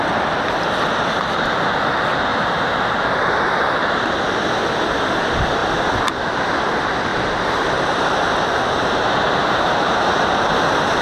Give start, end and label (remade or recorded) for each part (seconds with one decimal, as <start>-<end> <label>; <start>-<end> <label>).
0.0-2.3 recorded; 2.3-3.7 remade; 3.7-7.1 recorded; 7.1-9.7 remade; 9.7-11.0 recorded